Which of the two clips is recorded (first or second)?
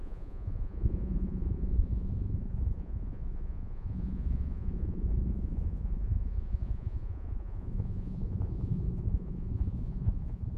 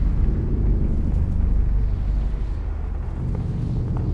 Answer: second